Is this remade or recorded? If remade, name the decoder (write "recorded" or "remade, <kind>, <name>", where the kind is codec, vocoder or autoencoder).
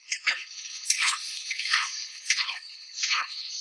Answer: remade, codec, HILCodec